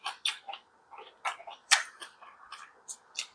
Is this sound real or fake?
fake